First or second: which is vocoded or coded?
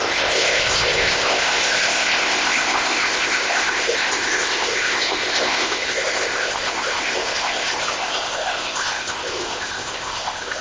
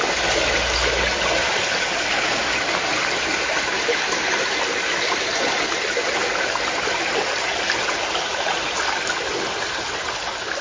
first